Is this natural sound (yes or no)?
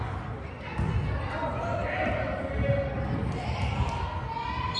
yes